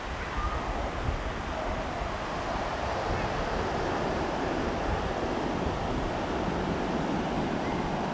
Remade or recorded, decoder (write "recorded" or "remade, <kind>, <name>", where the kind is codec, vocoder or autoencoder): recorded